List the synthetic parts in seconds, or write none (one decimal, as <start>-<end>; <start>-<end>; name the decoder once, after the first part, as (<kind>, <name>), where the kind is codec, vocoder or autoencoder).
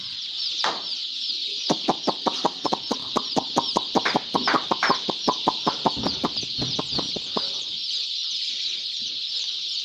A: 0.0-3.0 (vocoder, BigVGAN v2); 7.6-9.8